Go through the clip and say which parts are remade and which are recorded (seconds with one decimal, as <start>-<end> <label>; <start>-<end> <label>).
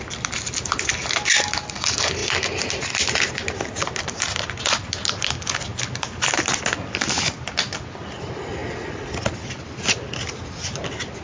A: 0.0-11.2 recorded